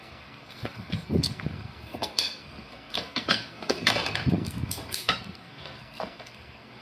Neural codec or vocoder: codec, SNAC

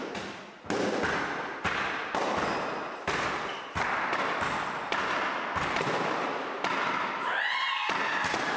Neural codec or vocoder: none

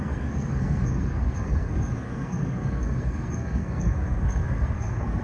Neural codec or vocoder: codec, SNAC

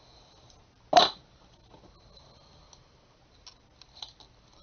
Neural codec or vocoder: none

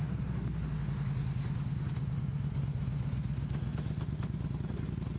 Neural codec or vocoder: none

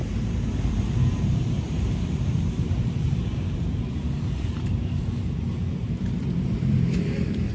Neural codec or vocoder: vocoder, BigVGAN v2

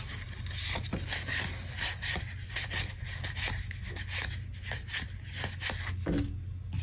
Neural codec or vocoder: none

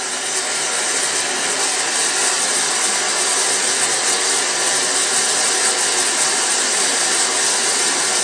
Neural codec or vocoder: none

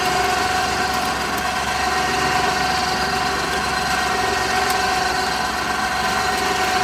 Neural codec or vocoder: none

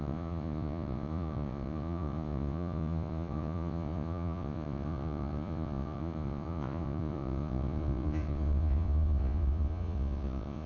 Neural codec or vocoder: vocoder, Vocos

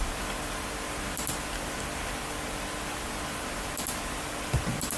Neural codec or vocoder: none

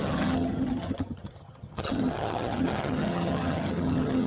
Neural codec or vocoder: vocoder, HiFi-GAN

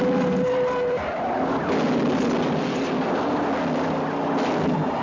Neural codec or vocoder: none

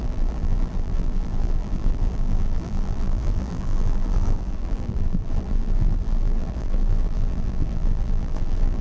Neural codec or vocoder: vocoder, BigVGAN v2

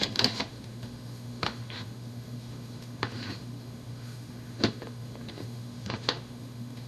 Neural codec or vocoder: autoencoder, DAC-VAE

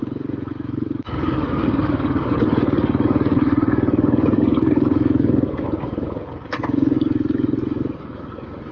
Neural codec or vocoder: codec, DAC